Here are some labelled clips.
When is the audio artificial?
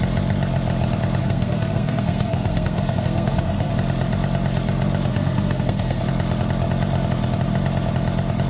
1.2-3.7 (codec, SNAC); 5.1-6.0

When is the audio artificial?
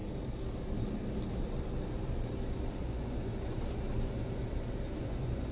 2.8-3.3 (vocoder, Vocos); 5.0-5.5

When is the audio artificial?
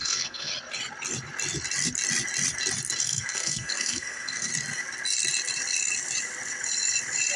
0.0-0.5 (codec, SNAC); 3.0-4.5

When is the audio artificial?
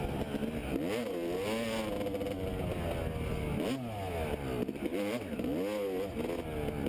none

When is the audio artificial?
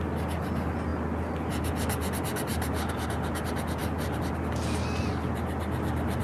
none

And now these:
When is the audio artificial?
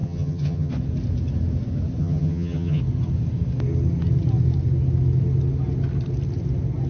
0.0-0.7 (vocoder, HiFi-GAN); 2.0-2.8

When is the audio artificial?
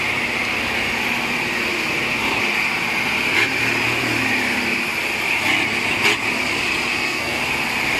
6.9-7.4 (codec, SNAC)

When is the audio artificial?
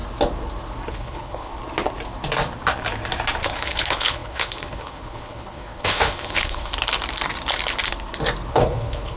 0.9-1.5 (codec, HILCodec); 3.4-6.7; 8.5-9.2